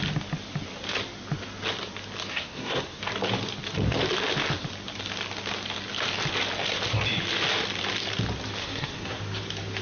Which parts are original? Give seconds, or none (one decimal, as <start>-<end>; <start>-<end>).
0.0-2.3; 3.0-8.6; 9.2-9.8